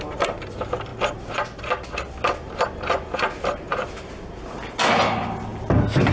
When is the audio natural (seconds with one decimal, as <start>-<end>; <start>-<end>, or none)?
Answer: 0.0-6.1